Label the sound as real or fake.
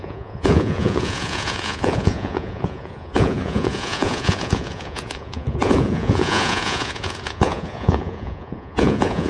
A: fake